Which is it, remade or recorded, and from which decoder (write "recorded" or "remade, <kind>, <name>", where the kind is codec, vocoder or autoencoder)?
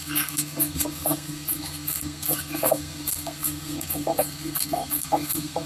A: remade, codec, SNAC